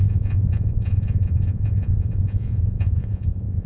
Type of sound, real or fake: fake